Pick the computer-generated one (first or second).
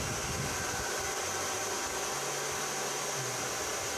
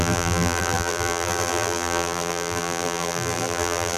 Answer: second